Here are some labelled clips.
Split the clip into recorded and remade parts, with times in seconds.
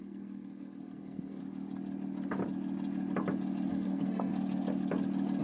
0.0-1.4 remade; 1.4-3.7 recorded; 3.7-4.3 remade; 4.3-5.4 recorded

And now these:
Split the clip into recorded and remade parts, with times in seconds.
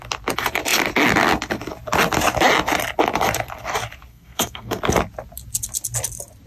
0.0-4.1 recorded; 4.1-4.8 remade; 4.8-6.5 recorded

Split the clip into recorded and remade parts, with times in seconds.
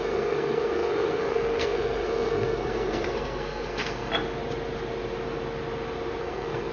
0.0-4.1 remade; 4.1-6.2 recorded; 6.2-6.7 remade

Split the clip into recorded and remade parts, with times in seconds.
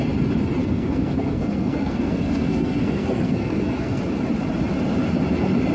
0.0-0.6 recorded; 0.6-4.0 remade; 4.0-5.7 recorded